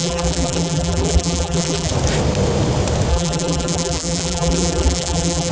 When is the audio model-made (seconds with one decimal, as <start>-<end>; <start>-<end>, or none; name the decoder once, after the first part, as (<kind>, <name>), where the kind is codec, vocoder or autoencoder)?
0.0-1.9 (vocoder, BigVGAN v2); 3.1-5.5